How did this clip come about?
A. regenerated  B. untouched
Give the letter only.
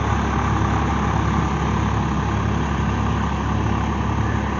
B